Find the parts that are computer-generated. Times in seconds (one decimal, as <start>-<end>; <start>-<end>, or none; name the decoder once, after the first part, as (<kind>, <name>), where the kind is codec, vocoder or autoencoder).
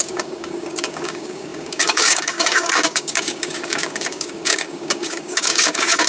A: 0.0-6.1 (codec, DAC)